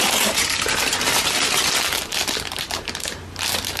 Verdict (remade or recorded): recorded